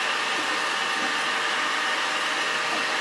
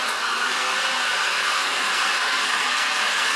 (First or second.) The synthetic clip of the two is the second